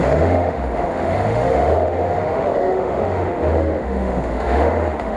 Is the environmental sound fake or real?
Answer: fake